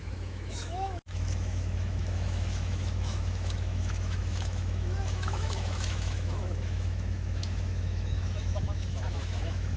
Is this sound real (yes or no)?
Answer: no